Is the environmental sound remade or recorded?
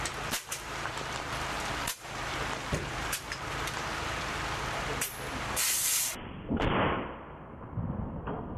remade